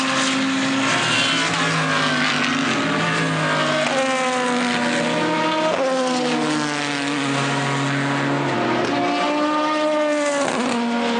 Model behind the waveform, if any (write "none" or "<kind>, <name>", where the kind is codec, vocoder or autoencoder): none